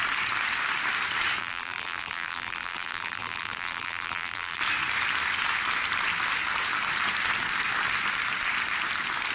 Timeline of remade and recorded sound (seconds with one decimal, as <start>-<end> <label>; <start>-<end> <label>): 0.0-1.4 recorded; 1.4-4.6 remade; 4.6-9.3 recorded